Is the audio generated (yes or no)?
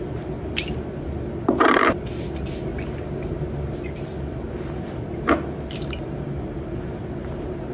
no